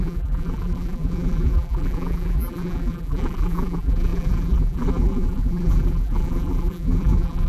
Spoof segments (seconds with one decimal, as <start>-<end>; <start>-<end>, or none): 0.0-7.5